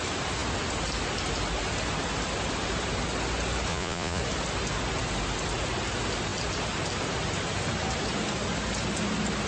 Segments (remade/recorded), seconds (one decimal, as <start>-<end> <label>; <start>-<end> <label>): 0.0-3.7 recorded; 3.7-4.2 remade; 4.2-9.5 recorded